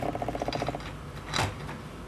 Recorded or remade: recorded